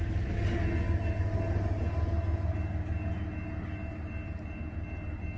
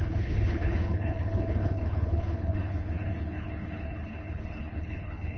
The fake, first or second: second